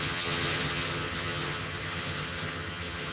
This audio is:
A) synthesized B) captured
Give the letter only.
A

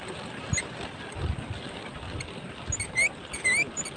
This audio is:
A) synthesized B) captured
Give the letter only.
B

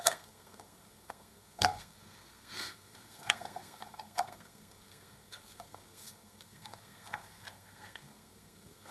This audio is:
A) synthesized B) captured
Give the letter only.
A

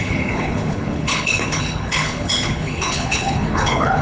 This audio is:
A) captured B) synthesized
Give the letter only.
B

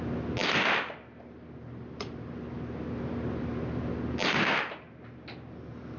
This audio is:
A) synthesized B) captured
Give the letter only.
B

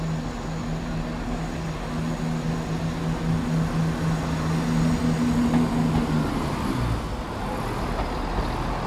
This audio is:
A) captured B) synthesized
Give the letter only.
A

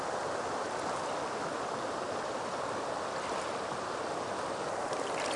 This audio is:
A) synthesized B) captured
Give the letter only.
B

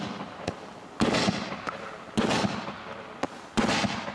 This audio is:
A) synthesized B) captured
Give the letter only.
B